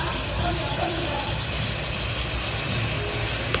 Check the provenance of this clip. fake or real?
real